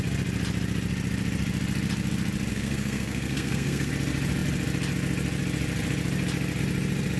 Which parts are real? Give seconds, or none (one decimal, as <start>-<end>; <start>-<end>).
0.0-2.5; 3.9-7.2